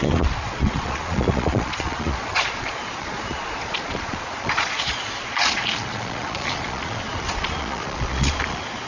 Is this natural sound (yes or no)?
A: no